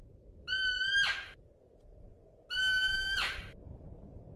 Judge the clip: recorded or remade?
recorded